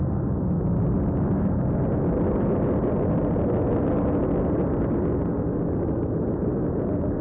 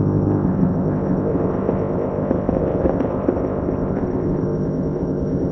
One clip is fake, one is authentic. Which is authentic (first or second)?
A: first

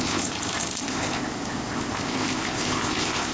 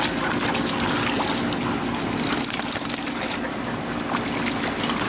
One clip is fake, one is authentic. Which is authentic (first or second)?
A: second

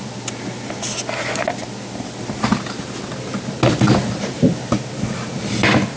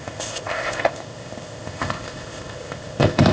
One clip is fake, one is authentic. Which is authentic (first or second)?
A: first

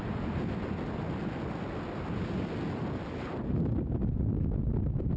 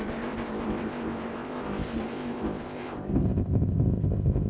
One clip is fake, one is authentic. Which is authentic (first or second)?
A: first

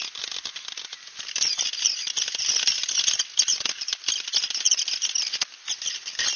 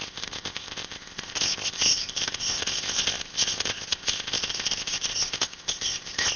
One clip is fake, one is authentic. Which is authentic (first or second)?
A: first